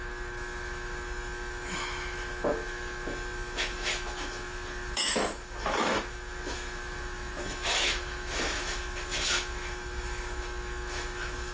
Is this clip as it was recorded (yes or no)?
no